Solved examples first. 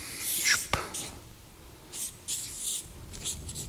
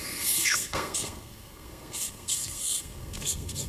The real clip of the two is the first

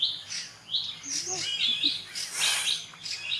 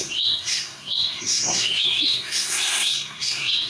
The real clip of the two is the first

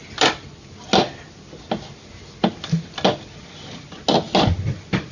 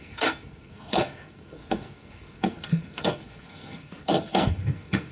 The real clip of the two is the first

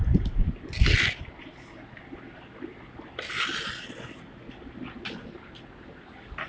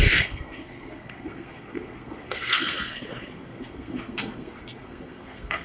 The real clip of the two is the first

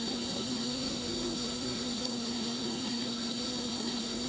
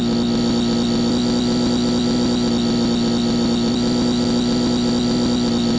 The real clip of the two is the second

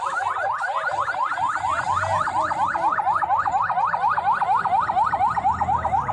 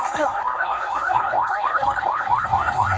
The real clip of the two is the first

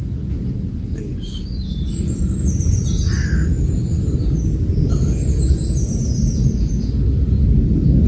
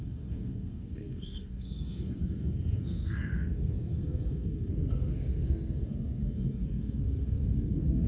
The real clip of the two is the first